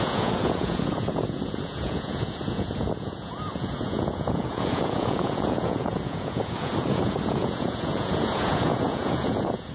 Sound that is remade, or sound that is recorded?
remade